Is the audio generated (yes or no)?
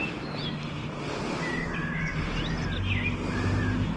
no